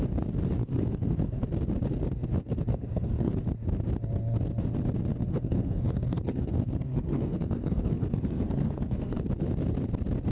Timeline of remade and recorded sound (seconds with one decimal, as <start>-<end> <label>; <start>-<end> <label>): 0.0-0.6 recorded; 0.6-1.4 remade; 1.4-2.7 recorded; 2.7-3.3 remade; 3.3-5.3 recorded; 5.3-9.2 remade; 9.2-10.3 recorded